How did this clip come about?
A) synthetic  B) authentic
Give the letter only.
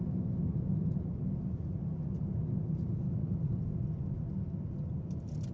B